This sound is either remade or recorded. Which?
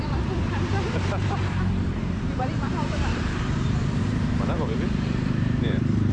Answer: remade